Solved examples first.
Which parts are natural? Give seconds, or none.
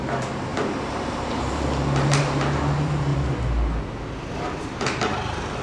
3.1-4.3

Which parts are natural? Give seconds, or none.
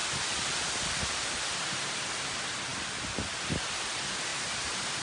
0.0-4.3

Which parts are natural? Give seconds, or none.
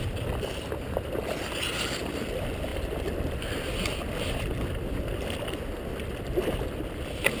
0.0-7.4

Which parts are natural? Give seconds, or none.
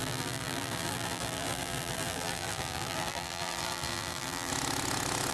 4.5-5.3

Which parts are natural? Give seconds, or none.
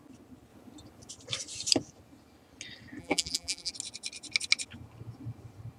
0.0-3.0; 3.7-5.8